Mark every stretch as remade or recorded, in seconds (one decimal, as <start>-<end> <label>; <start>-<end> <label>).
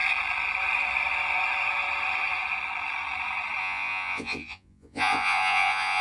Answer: 0.0-3.6 recorded; 3.6-6.0 remade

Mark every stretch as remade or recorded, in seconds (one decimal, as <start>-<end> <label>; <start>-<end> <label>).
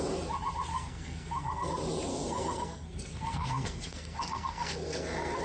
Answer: 0.0-0.7 recorded; 0.7-1.7 remade; 1.7-2.1 recorded; 2.1-5.4 remade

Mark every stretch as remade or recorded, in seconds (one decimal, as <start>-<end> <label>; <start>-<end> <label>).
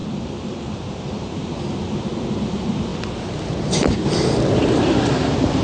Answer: 0.0-1.5 remade; 1.5-4.6 recorded; 4.6-5.6 remade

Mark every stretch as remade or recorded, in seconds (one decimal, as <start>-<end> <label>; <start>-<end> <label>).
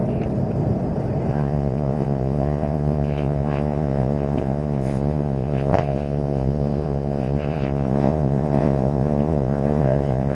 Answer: 0.0-1.3 recorded; 1.3-10.3 remade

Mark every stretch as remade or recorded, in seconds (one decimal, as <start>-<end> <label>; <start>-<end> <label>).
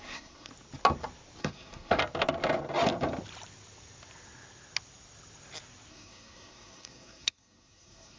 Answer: 0.0-0.5 remade; 0.5-1.4 recorded; 1.4-2.0 remade; 2.0-5.9 recorded; 5.9-8.2 remade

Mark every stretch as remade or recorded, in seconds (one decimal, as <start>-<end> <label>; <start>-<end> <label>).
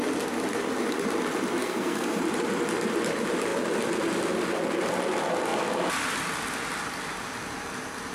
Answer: 0.0-1.6 recorded; 1.6-2.2 remade; 2.2-8.1 recorded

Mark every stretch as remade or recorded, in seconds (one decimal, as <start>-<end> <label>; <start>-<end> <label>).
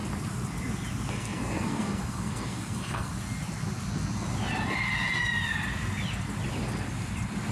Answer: 0.0-1.1 recorded; 1.1-3.1 remade; 3.1-7.5 recorded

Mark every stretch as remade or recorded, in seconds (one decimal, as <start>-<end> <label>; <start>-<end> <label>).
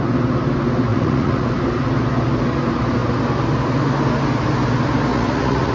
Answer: 0.0-0.9 recorded; 0.9-1.5 remade; 1.5-5.1 recorded; 5.1-5.7 remade